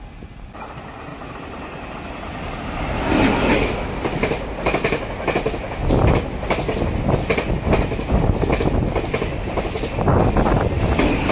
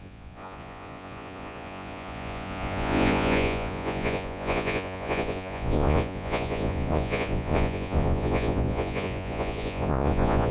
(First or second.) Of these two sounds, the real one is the first